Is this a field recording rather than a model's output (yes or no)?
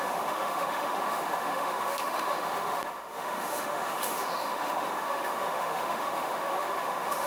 no